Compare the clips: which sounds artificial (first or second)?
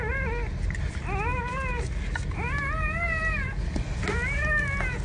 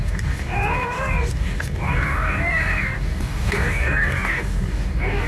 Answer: second